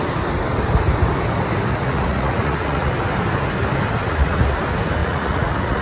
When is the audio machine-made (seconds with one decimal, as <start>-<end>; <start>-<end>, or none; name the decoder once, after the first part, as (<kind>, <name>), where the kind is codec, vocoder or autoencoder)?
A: 1.7-2.9 (vocoder, Vocos); 4.0-4.6; 5.0-5.8

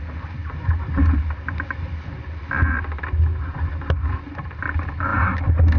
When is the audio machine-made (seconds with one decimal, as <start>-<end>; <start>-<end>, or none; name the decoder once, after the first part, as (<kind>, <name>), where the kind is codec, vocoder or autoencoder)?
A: none

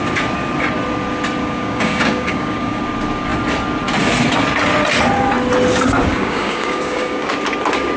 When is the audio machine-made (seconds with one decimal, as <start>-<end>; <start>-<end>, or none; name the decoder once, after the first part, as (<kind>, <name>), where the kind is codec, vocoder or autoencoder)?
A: 1.4-2.8 (codec, DAC); 6.1-7.3

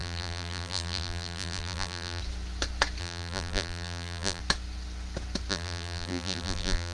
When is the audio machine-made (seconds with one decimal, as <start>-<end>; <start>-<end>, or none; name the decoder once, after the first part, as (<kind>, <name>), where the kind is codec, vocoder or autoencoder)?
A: 0.0-2.2 (vocoder, BigVGAN v2); 3.0-4.4; 5.5-6.9